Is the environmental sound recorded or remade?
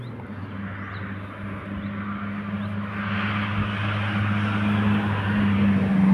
recorded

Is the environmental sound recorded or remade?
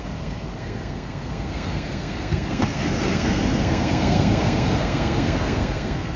remade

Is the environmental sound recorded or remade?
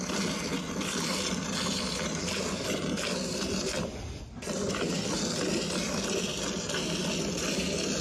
recorded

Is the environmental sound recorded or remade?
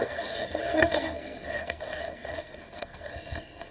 remade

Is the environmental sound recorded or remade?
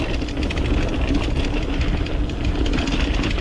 recorded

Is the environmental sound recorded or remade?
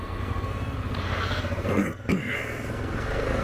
remade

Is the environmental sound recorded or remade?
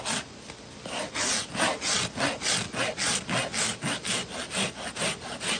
recorded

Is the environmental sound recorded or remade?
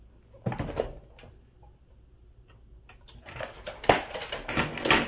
recorded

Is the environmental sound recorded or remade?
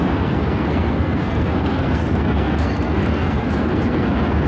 remade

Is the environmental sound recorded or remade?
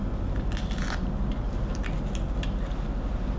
recorded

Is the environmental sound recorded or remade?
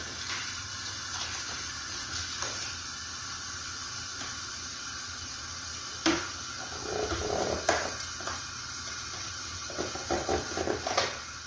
recorded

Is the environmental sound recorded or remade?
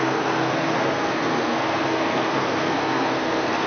remade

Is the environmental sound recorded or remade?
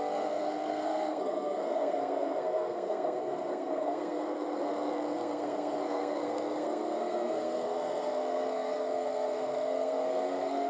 remade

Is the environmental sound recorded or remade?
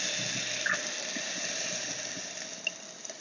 recorded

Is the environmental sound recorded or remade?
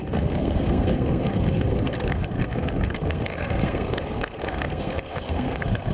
remade